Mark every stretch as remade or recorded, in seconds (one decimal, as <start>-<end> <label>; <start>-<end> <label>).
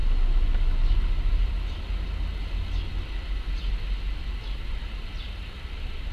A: 0.0-6.1 recorded